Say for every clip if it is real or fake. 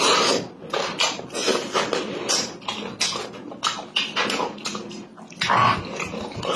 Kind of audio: real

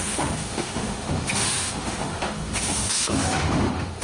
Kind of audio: fake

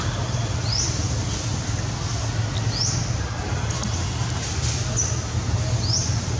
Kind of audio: real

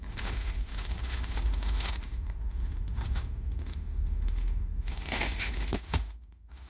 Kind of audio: fake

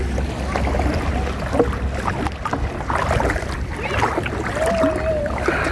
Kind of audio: real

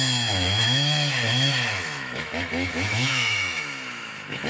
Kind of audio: fake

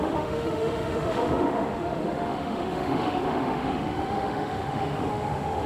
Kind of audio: fake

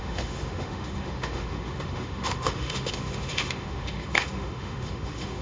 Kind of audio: fake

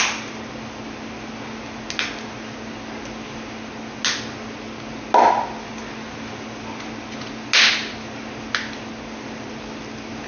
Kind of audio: real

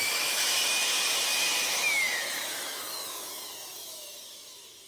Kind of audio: fake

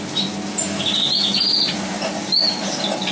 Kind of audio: real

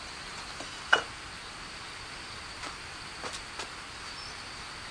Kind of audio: real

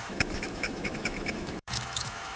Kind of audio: fake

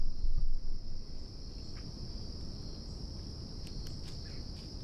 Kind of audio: real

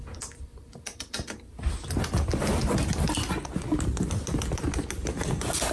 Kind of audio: real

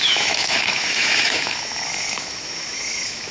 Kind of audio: fake